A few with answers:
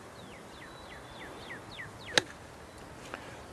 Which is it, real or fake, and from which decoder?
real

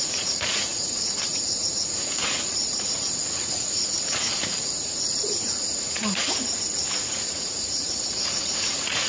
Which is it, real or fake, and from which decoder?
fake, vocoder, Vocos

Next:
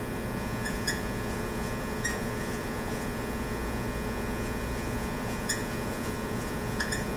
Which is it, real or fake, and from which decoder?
fake, vocoder, Vocos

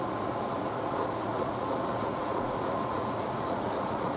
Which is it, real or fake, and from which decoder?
fake, vocoder, Vocos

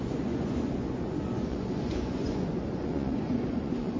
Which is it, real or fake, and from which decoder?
fake, vocoder, Vocos